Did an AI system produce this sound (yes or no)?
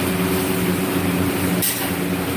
no